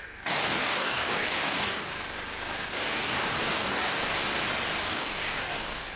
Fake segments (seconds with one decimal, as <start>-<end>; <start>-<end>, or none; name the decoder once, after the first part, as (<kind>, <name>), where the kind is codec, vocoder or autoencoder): 0.0-1.9 (codec, DAC); 2.7-4.0; 4.8-6.0